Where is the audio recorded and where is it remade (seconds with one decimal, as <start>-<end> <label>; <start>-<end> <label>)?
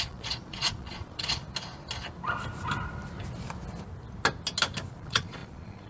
0.0-1.4 remade; 1.4-4.9 recorded; 4.9-5.9 remade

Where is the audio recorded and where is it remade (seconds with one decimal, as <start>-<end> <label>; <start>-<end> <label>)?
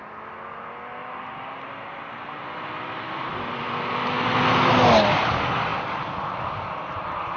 0.0-1.0 recorded; 1.0-2.0 remade; 2.0-7.4 recorded